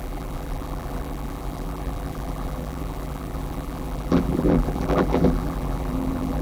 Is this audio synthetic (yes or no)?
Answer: yes